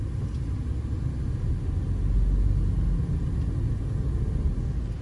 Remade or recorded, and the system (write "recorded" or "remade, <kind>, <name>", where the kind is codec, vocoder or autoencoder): recorded